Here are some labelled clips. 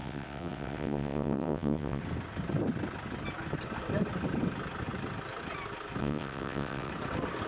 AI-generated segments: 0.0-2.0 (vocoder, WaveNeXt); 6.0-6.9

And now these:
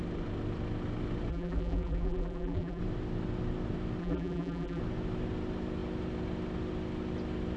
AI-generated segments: 1.3-2.8 (vocoder, BigVGAN v2); 4.0-4.8

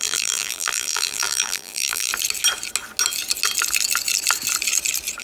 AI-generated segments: 0.0-2.1 (vocoder, BigVGAN v2)

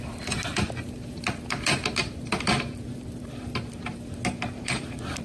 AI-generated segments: 0.0-5.2 (vocoder, BigVGAN v2)

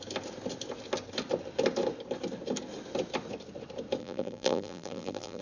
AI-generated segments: 4.0-5.4 (vocoder, BigVGAN v2)

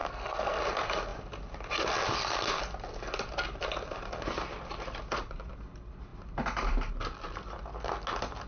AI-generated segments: 0.0-0.6 (codec, SNAC)

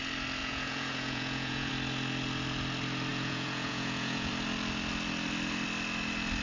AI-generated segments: 0.4-1.7 (vocoder, Vocos); 3.1-4.3